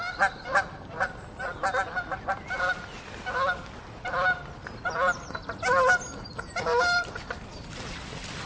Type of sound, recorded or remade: recorded